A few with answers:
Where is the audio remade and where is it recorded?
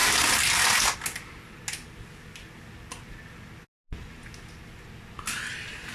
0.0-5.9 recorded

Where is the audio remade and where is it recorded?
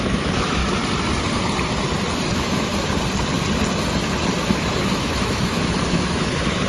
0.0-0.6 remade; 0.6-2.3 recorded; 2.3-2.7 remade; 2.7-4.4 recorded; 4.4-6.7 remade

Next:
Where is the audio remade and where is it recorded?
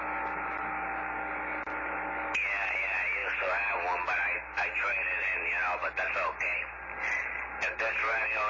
0.0-8.5 recorded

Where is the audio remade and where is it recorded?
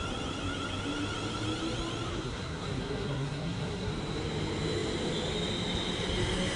0.0-2.1 recorded; 2.1-3.9 remade; 3.9-6.6 recorded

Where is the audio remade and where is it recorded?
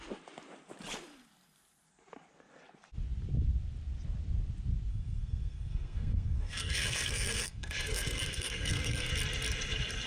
0.0-4.9 recorded; 4.9-9.1 remade; 9.1-10.1 recorded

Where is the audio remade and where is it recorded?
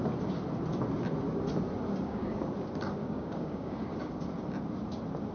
0.0-1.9 recorded; 1.9-2.5 remade; 2.5-3.0 recorded; 3.0-4.1 remade; 4.1-5.3 recorded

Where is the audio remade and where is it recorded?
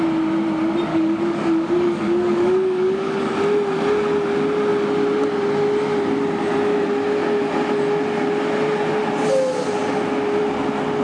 0.0-0.9 recorded; 0.9-3.3 remade; 3.3-11.0 recorded